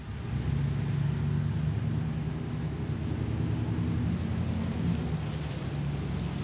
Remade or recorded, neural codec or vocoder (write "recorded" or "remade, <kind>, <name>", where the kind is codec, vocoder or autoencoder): recorded